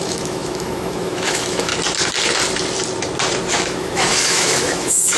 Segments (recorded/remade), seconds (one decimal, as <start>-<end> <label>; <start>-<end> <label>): 0.0-1.7 remade; 1.7-3.5 recorded; 3.5-5.2 remade